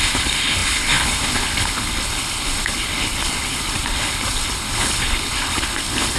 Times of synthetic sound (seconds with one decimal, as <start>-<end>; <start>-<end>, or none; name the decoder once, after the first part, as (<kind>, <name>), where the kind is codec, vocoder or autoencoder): 0.0-6.2 (codec, HILCodec)